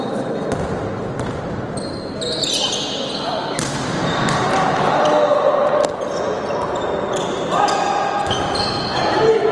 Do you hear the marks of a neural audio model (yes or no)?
no